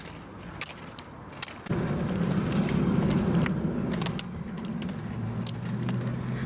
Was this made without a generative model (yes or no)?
yes